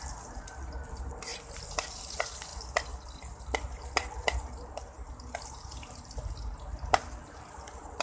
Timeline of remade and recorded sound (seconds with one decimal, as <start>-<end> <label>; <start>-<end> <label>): 0.0-8.0 recorded